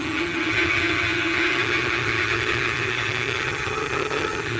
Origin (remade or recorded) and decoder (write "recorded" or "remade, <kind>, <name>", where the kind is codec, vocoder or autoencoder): remade, vocoder, HiFi-GAN